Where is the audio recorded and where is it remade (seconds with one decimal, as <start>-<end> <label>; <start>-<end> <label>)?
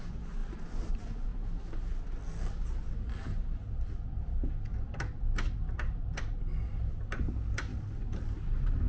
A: 0.0-8.9 recorded